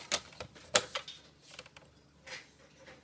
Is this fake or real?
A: real